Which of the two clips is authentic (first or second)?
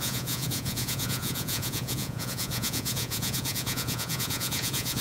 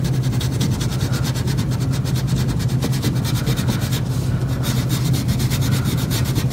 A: second